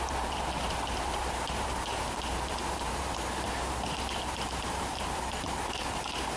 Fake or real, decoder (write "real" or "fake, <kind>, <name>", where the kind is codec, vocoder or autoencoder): fake, vocoder, BigVGAN v2